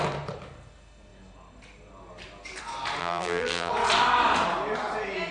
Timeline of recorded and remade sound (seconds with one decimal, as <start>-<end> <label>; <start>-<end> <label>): 0.0-3.0 recorded; 3.0-3.7 remade; 3.7-5.3 recorded